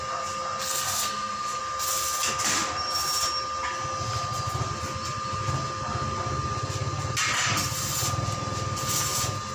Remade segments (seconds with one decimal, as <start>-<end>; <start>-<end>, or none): 0.6-1.6